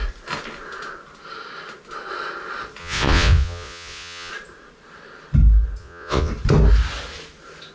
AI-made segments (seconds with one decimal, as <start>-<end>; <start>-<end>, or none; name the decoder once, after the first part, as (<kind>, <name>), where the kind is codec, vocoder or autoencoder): 2.8-4.3 (vocoder, Vocos); 5.8-6.3